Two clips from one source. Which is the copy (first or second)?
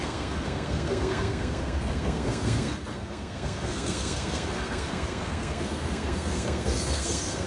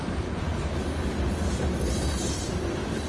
first